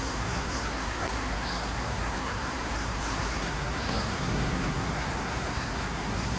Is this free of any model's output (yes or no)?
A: no